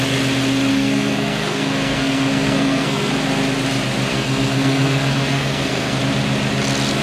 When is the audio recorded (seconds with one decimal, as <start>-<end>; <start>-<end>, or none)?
0.0-0.7; 3.1-4.1; 6.0-7.0